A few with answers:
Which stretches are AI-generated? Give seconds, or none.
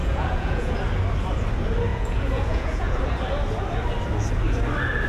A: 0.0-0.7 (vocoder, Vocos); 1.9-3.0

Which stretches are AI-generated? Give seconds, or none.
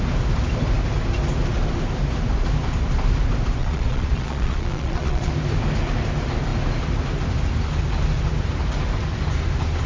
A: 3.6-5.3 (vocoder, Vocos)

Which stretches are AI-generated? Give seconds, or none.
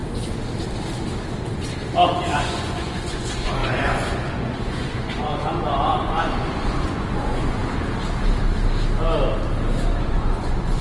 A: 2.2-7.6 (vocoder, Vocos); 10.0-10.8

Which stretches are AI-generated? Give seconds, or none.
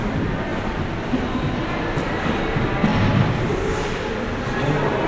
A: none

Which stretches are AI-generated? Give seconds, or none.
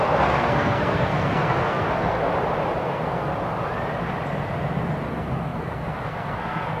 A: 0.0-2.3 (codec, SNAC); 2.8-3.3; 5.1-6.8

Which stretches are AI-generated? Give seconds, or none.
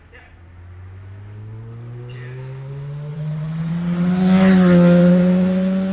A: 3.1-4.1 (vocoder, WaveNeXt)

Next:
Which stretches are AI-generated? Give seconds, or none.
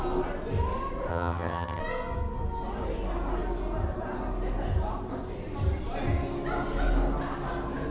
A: 1.1-1.8 (vocoder, HiFi-GAN)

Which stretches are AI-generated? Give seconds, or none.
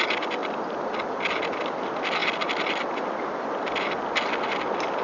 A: none